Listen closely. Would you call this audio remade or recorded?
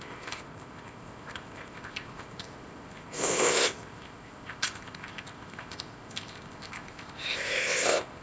remade